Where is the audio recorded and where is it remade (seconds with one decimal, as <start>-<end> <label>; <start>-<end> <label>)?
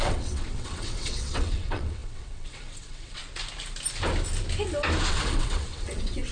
0.0-3.2 remade; 3.2-5.1 recorded; 5.1-6.3 remade